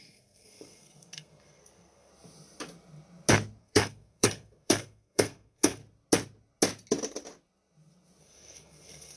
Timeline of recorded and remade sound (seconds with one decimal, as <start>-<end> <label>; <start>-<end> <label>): 0.0-2.1 remade; 2.1-3.6 recorded; 3.6-5.8 remade; 5.8-8.2 recorded; 8.2-9.2 remade